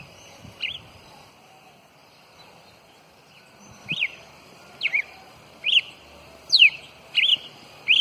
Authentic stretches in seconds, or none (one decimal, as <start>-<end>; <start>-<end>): 0.0-2.0; 6.8-7.3

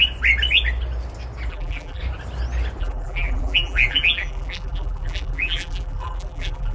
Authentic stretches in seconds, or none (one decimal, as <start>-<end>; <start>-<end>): 0.0-1.5; 2.0-2.8

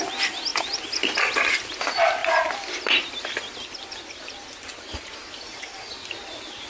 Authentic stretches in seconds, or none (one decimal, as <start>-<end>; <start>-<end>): 0.0-6.7

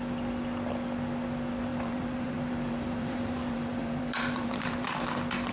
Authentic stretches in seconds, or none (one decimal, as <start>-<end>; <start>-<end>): 0.0-1.7; 5.0-5.5

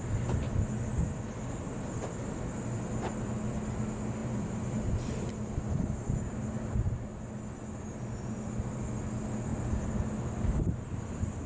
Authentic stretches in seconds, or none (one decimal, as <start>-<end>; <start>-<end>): 0.0-4.2; 7.1-11.5

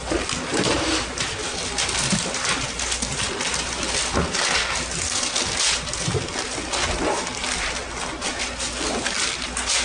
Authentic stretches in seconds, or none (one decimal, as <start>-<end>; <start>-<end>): 0.0-0.5; 1.0-9.8

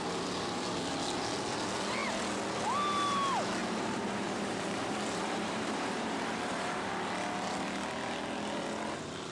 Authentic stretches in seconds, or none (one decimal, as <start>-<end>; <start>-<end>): 0.0-3.6; 6.9-9.3

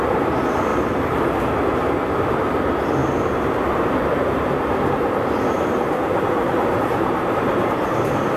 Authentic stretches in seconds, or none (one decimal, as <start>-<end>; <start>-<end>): 0.0-0.7; 1.2-3.0; 5.4-6.1; 8.0-8.4